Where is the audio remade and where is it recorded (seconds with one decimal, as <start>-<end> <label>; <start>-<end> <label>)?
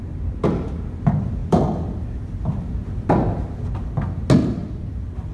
0.0-1.4 recorded; 1.4-2.4 remade; 2.4-4.4 recorded; 4.4-5.3 remade